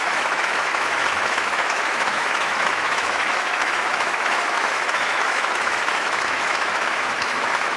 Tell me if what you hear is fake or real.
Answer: fake